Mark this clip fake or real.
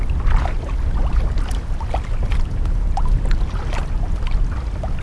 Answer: real